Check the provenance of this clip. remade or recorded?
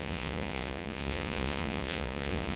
remade